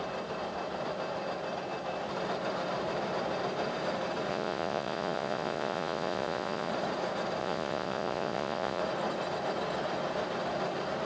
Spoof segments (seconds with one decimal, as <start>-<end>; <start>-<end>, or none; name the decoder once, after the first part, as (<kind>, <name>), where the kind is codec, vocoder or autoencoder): 4.3-6.7 (vocoder, Vocos); 7.4-8.8